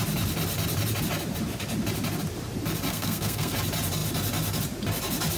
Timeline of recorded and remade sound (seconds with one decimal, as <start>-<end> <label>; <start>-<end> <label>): 0.0-2.9 recorded; 2.9-3.5 remade; 3.5-5.4 recorded